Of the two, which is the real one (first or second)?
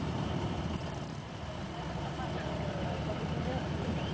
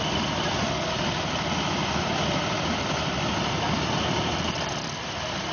second